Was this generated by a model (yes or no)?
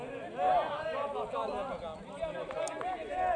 no